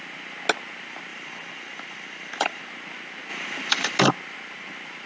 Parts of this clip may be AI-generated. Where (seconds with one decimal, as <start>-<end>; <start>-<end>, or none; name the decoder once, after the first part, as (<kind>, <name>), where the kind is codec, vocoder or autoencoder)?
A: 1.1-2.6 (vocoder, BigVGAN v2); 3.3-4.0